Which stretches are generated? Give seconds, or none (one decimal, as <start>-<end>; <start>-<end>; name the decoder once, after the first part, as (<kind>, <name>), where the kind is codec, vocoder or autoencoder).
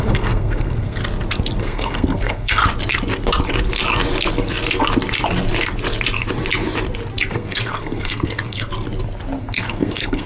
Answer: 0.0-1.0 (codec, SNAC); 1.6-2.6; 7.3-8.7; 9.4-10.3